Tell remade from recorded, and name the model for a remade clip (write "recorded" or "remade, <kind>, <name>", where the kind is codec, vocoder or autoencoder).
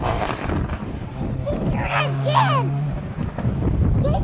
recorded